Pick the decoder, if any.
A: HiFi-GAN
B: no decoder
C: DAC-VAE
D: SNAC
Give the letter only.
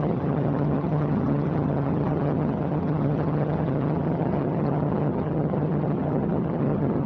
A